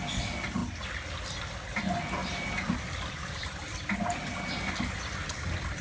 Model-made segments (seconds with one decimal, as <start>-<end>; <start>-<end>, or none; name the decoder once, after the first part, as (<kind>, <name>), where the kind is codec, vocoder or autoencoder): none